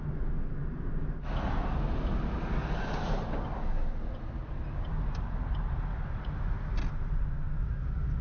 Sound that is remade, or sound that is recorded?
recorded